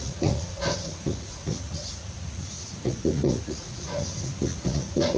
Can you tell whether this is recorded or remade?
remade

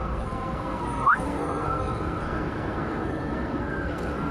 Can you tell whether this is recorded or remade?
remade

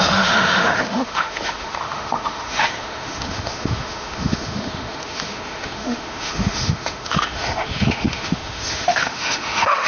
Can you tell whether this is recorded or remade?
remade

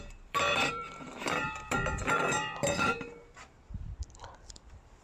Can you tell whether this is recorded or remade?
remade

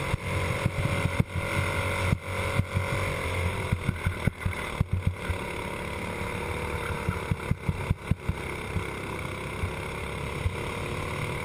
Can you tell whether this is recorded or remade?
recorded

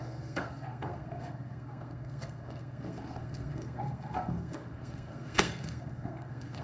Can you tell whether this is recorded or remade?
remade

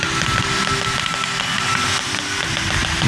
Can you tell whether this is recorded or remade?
recorded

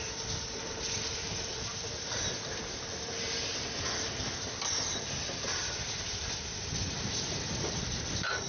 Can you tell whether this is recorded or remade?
recorded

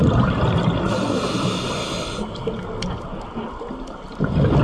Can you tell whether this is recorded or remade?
recorded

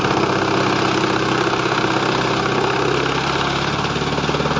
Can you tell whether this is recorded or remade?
recorded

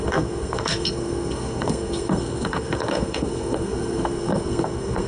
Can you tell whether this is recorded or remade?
remade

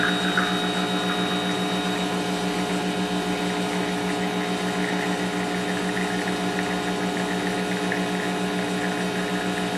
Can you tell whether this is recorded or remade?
recorded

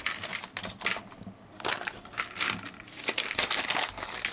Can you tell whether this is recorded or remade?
recorded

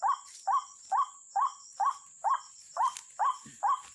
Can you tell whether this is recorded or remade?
recorded